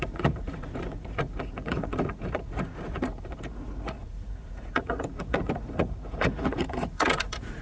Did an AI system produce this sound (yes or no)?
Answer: yes